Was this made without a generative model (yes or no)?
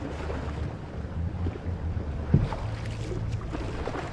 yes